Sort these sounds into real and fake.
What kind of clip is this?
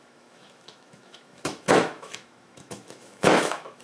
fake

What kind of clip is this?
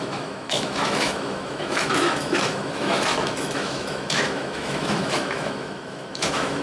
fake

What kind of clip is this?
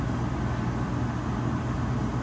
real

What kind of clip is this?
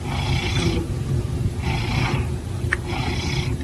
real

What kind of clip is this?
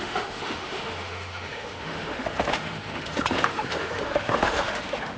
fake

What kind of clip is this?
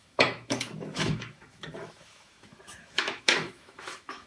fake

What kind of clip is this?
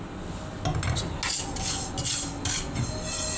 real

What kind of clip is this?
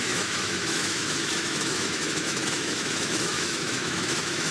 fake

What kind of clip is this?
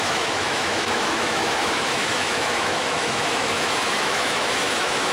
fake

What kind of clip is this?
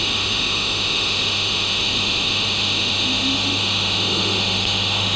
fake